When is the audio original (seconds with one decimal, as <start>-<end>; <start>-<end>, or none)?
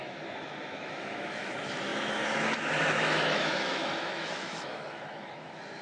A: none